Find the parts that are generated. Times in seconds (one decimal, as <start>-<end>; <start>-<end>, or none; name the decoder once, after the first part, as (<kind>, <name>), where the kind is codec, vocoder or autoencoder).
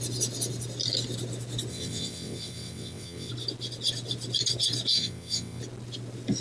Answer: 1.7-3.3 (vocoder, WaveNeXt); 4.9-5.6